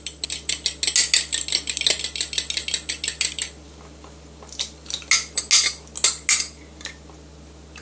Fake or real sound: real